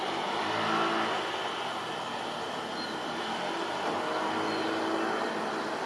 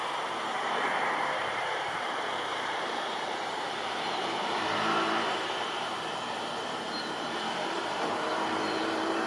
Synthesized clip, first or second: second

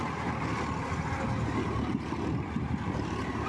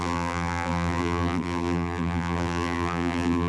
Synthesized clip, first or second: second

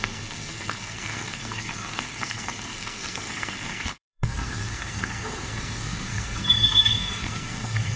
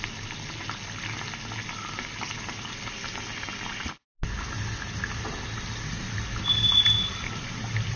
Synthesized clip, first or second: first